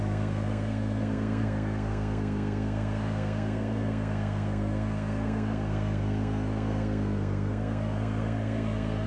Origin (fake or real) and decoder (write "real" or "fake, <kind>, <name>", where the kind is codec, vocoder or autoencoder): fake, codec, SNAC